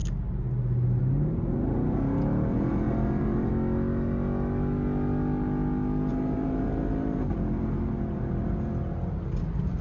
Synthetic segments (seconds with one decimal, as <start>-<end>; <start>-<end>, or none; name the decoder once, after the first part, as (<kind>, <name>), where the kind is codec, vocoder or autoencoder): 2.5-3.5 (vocoder, BigVGAN v2); 6.1-8.7